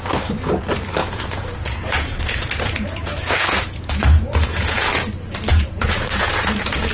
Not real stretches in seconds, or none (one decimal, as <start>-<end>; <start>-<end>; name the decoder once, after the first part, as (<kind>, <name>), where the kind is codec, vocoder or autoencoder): 1.0-5.1 (vocoder, Vocos); 5.5-6.9